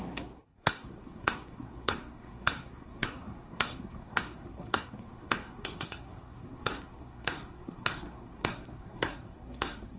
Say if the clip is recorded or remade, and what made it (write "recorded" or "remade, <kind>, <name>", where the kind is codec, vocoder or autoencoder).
remade, codec, SNAC